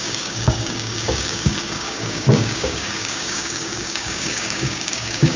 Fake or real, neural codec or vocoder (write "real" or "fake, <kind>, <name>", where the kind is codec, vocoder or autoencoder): fake, codec, DAC